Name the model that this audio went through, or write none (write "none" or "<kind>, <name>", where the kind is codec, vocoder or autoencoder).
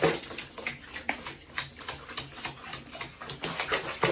none